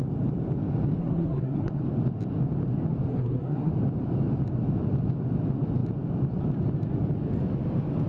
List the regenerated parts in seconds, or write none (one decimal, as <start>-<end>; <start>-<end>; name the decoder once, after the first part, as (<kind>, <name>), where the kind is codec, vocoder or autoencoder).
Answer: 1.0-1.8 (codec, SNAC); 3.1-3.7